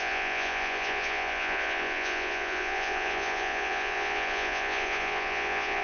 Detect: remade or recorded remade